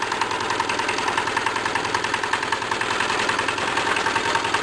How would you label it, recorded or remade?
recorded